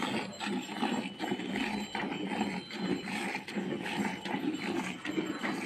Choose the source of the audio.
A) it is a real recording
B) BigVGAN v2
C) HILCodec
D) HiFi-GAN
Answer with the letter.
A